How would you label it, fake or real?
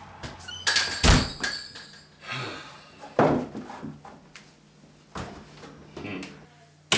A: real